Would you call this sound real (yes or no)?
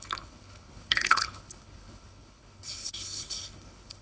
no